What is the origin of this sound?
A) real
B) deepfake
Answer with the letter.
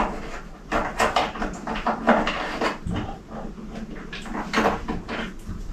A